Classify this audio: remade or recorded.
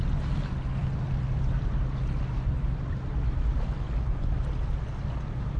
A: recorded